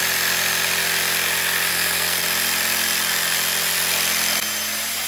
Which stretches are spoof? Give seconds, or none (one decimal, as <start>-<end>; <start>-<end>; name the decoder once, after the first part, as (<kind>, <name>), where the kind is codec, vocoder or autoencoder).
1.7-2.2 (codec, SNAC)